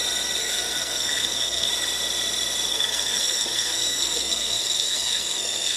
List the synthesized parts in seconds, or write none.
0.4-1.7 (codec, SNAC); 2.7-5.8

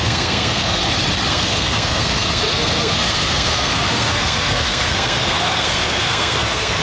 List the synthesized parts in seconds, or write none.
0.0-0.8 (codec, SNAC); 1.3-6.8

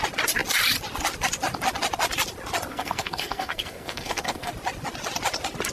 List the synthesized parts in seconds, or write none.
2.7-4.5 (codec, SNAC)

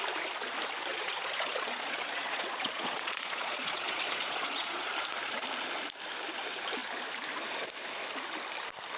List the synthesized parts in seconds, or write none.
0.9-4.9 (vocoder, Vocos)

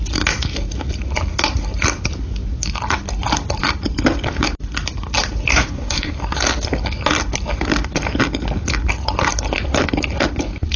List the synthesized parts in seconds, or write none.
5.5-6.1 (codec, DAC)

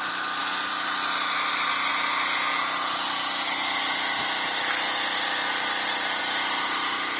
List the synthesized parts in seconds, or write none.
none

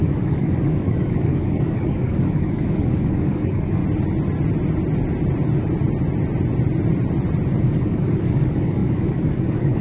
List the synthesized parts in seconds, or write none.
0.0-3.8 (codec, DAC); 7.6-9.8

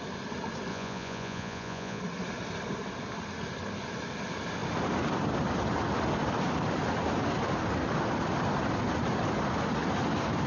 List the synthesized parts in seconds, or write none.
0.7-2.0 (vocoder, Vocos)